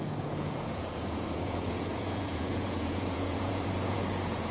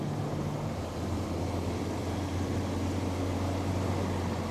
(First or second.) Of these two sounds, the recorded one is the second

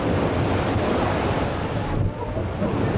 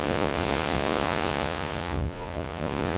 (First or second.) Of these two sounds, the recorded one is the first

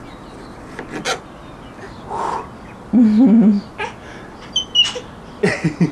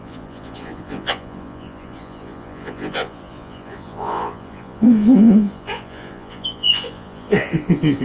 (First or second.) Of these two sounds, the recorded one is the first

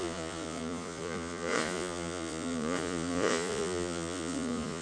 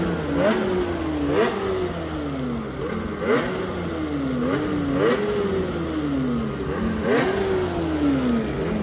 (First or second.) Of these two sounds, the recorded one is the second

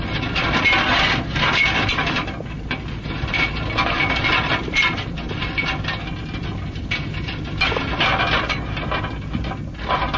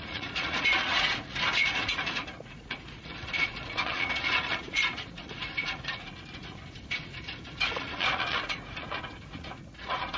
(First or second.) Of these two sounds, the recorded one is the first